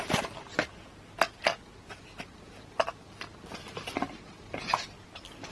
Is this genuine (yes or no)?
yes